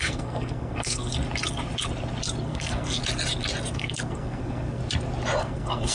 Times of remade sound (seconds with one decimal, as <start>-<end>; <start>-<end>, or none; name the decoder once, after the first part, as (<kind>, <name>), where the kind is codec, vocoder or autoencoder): 0.0-1.1 (codec, SNAC); 2.4-3.0; 3.7-4.8; 5.4-5.9